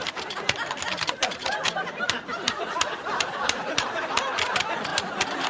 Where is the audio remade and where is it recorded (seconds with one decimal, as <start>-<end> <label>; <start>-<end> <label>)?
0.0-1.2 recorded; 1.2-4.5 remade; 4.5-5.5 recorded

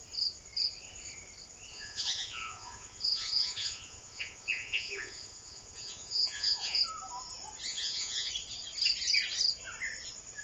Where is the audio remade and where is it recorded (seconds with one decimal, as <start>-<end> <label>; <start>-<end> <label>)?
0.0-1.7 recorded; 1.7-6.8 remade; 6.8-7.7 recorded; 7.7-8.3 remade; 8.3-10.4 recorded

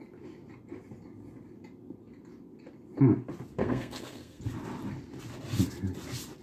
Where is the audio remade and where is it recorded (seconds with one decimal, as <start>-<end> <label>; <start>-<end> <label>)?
0.0-3.6 recorded; 3.6-4.4 remade; 4.4-6.4 recorded

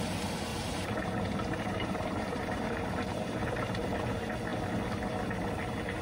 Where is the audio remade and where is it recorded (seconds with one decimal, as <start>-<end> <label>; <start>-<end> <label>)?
0.0-0.5 recorded; 0.5-4.1 remade; 4.1-6.0 recorded

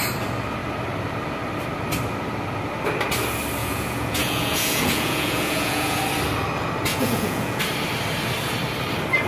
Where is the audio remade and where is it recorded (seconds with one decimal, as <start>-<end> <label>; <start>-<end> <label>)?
0.0-3.6 recorded; 3.6-6.0 remade; 6.0-6.9 recorded; 6.9-7.6 remade; 7.6-9.3 recorded